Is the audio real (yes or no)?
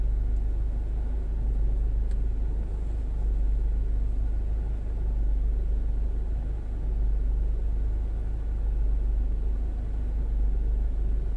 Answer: yes